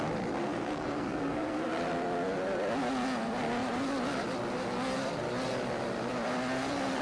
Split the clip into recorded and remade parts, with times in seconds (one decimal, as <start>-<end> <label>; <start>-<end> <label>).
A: 0.0-0.4 recorded; 0.4-1.7 remade; 1.7-7.0 recorded